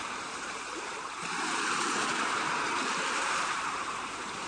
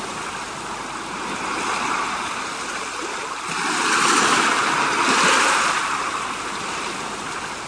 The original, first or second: second